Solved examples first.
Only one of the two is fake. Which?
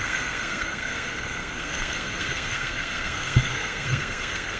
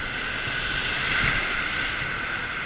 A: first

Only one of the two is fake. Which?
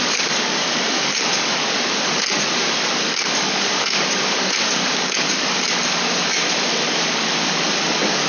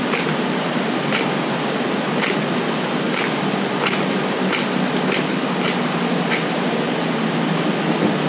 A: first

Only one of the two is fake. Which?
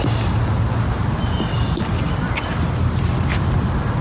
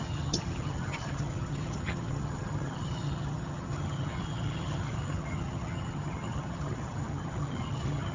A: second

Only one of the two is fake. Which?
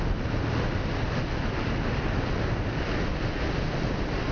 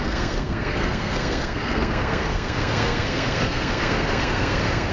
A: second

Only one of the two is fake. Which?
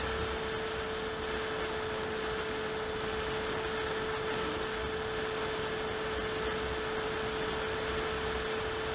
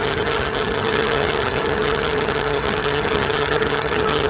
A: second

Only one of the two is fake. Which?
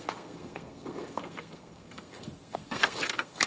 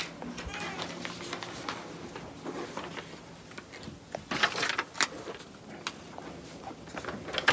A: first